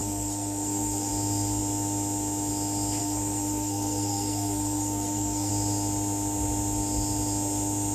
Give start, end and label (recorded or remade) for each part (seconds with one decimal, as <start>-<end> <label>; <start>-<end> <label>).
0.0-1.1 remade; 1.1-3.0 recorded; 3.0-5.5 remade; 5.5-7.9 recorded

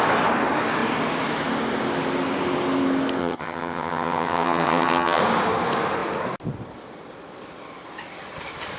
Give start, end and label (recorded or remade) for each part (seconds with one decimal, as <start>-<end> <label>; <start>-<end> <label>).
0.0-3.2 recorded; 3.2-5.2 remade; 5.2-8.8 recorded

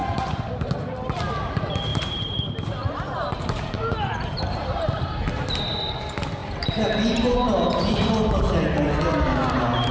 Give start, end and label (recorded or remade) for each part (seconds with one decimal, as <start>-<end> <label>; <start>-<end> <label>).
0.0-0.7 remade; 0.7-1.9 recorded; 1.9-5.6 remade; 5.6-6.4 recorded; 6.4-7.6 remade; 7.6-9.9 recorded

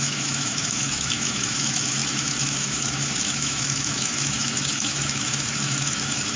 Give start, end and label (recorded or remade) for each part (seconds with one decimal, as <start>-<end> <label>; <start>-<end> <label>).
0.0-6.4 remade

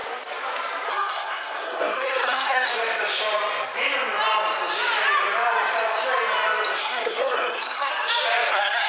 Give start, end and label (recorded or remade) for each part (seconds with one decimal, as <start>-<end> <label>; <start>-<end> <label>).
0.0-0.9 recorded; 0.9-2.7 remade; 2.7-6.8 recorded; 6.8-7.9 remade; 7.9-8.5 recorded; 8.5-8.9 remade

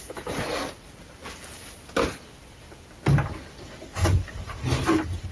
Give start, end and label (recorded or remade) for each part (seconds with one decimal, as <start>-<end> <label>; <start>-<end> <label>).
0.0-5.3 recorded

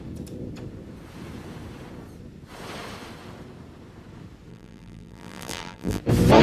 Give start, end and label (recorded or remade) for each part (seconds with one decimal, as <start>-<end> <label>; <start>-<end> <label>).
0.0-4.5 recorded; 4.5-6.0 remade; 6.0-6.4 recorded